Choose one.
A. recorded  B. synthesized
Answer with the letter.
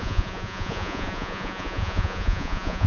B